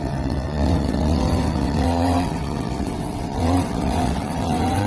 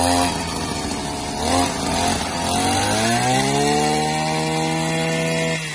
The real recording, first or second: second